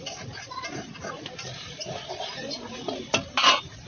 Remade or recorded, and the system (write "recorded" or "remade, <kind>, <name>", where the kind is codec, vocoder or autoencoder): recorded